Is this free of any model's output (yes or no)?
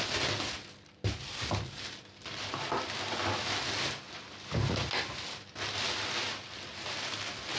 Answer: yes